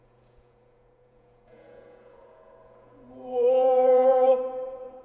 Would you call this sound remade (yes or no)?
yes